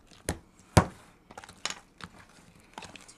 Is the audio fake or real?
real